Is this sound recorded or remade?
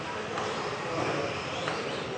recorded